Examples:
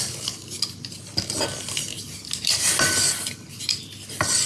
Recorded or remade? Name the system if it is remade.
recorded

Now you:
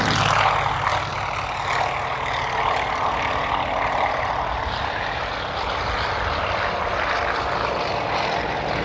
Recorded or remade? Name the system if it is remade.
recorded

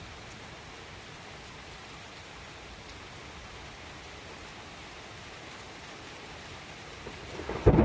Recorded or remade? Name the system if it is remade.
recorded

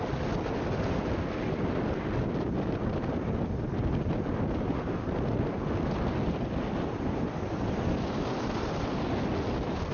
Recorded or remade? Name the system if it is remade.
recorded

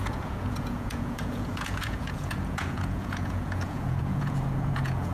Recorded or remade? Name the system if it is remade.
remade, vocoder, Vocos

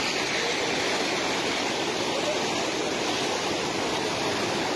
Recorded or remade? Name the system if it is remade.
recorded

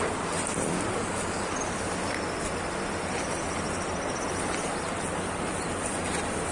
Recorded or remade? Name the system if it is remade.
recorded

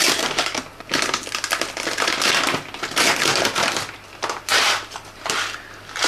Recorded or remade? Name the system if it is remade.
recorded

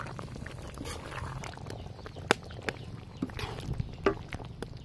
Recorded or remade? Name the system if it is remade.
recorded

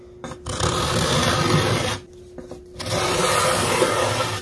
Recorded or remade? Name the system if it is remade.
recorded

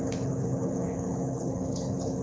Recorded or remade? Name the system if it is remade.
remade, codec, HILCodec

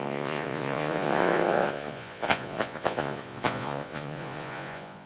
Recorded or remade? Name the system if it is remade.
remade, vocoder, Vocos